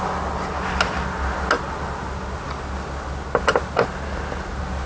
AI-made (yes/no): no